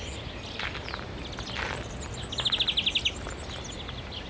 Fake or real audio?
real